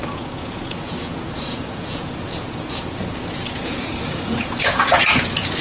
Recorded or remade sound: remade